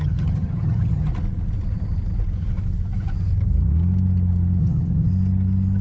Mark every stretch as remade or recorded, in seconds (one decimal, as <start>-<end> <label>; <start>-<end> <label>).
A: 0.0-1.1 remade; 1.1-4.6 recorded; 4.6-5.1 remade; 5.1-5.8 recorded